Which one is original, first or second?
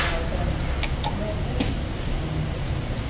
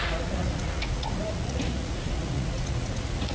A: first